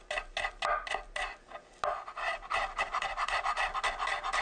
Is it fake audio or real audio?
real